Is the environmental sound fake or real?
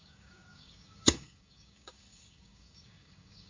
fake